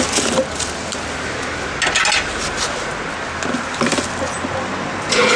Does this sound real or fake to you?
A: real